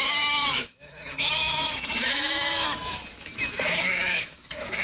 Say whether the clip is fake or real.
fake